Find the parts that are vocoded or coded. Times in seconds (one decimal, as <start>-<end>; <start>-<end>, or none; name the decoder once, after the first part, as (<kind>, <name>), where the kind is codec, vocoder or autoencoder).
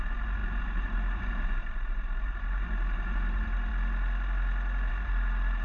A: 0.0-3.7 (vocoder, BigVGAN v2); 4.9-5.6